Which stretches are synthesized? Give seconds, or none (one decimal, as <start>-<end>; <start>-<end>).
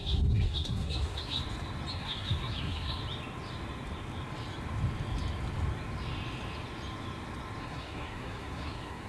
0.0-1.4; 1.9-3.0; 7.6-9.1